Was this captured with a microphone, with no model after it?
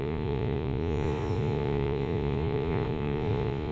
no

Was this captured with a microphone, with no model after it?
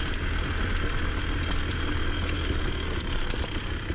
yes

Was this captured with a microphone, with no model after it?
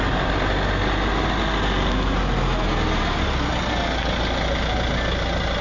yes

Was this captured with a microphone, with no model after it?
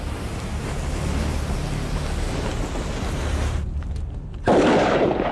yes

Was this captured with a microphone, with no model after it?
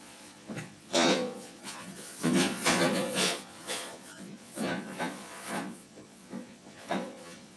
no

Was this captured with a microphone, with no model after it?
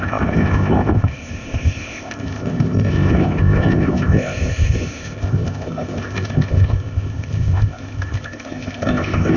no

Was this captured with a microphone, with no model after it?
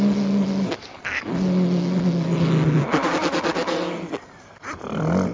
yes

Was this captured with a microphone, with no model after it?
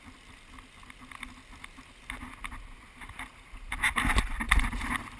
yes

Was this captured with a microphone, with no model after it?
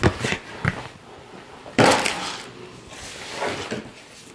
yes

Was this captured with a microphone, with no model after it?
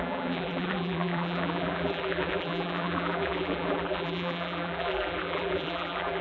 no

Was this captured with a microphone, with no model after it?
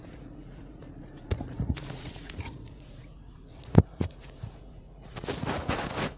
no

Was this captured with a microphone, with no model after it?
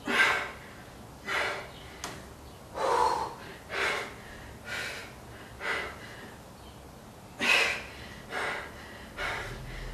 yes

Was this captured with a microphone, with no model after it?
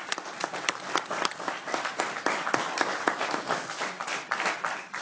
yes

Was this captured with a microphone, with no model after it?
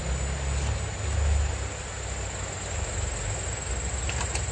yes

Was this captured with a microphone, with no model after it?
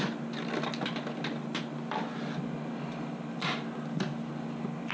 yes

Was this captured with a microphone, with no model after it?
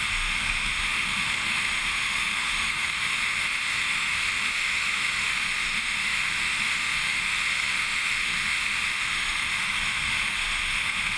no